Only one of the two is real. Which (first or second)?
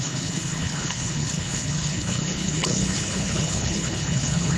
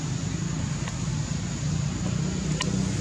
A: second